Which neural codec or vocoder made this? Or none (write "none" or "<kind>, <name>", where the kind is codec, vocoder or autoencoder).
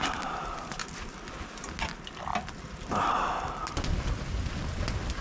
none